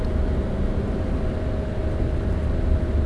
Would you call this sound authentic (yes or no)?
yes